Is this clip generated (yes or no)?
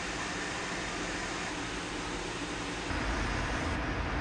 no